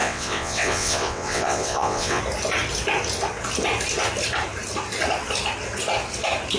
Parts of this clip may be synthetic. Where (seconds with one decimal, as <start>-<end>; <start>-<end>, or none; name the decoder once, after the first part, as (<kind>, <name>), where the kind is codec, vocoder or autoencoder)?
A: 0.0-2.2 (vocoder, WaveNeXt)